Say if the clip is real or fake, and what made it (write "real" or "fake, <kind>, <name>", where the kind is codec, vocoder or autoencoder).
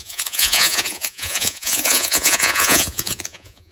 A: fake, vocoder, Vocos